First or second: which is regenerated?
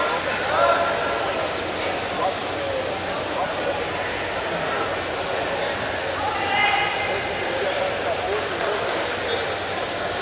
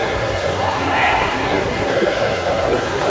second